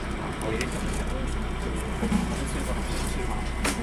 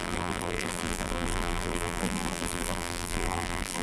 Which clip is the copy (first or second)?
second